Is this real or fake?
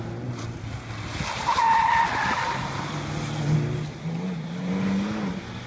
real